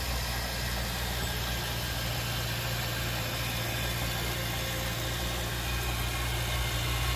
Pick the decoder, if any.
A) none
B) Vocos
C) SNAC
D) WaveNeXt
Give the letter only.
A